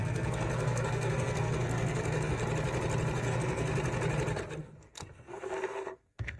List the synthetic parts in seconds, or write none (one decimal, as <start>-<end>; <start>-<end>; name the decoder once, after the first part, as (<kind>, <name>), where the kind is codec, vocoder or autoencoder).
0.0-2.4 (codec, SNAC); 3.2-3.7; 4.6-6.4